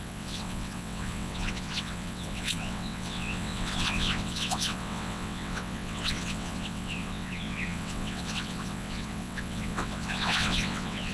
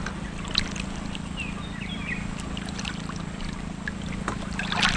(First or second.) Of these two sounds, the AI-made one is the first